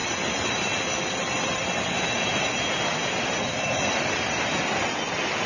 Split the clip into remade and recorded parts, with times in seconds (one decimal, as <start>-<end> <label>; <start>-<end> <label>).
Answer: 0.0-5.5 recorded

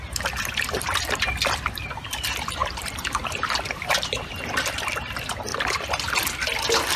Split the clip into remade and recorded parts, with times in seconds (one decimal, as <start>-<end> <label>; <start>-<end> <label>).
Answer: 0.0-2.6 recorded; 2.6-4.3 remade; 4.3-5.5 recorded; 5.5-6.1 remade; 6.1-7.0 recorded